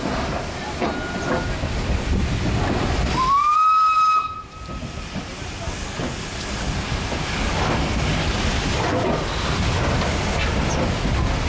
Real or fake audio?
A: real